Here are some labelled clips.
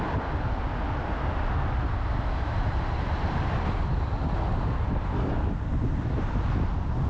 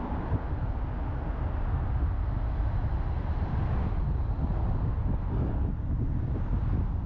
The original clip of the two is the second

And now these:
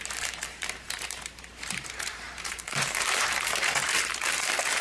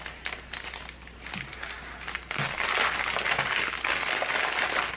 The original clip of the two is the second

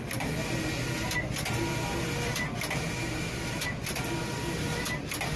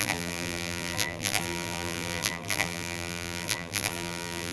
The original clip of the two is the first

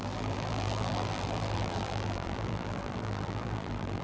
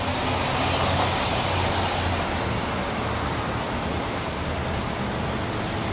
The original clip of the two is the second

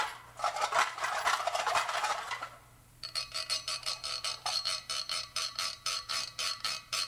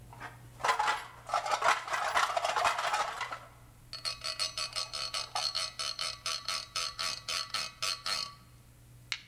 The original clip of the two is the second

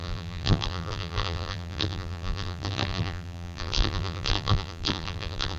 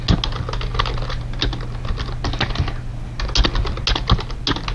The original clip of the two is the second